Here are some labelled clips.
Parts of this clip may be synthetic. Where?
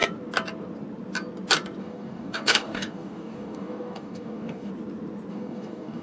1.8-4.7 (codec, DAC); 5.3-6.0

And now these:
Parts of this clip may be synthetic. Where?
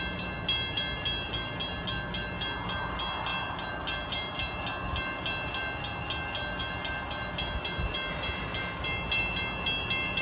none